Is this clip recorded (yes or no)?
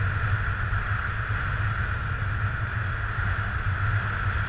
yes